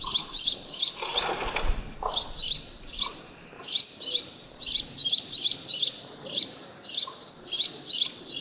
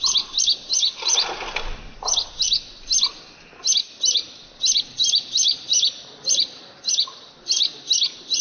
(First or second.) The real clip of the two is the second